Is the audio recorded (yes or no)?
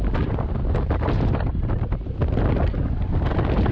yes